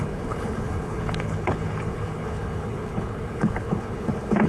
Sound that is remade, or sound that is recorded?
remade